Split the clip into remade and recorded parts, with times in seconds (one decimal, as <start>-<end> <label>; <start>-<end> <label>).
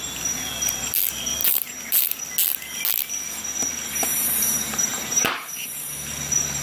0.0-1.4 recorded; 1.4-2.2 remade; 2.2-4.1 recorded; 4.1-5.8 remade; 5.8-6.6 recorded